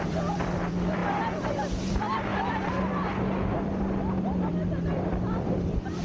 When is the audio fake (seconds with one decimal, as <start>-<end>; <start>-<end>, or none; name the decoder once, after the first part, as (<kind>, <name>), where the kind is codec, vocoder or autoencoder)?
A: 0.0-1.0 (vocoder, BigVGAN v2); 1.7-6.0